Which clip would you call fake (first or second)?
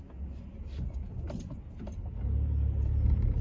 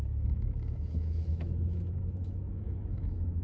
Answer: second